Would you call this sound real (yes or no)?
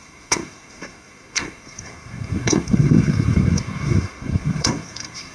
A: no